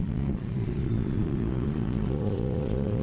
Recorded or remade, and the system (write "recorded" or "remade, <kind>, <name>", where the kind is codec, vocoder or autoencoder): remade, vocoder, Vocos